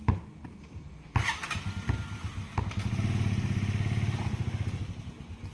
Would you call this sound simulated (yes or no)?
no